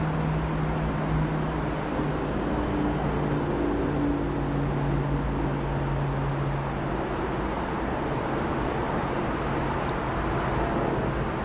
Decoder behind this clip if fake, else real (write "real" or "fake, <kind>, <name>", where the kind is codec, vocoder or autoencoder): real